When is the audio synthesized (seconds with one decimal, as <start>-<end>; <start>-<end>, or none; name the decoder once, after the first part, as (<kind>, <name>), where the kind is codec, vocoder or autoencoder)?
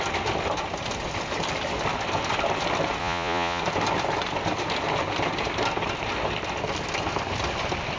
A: 3.0-3.6 (vocoder, Vocos)